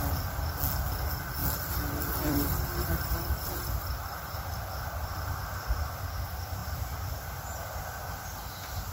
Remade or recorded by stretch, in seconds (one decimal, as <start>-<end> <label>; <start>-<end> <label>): 0.0-1.4 recorded; 1.4-5.5 remade; 5.5-6.6 recorded; 6.6-7.8 remade; 7.8-8.9 recorded